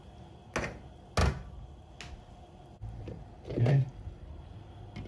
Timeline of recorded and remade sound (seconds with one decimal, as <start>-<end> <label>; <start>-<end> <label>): 0.0-2.8 recorded; 2.8-4.3 remade; 4.3-5.1 recorded